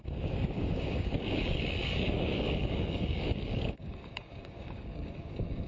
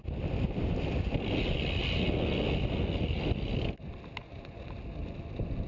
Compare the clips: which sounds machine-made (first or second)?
first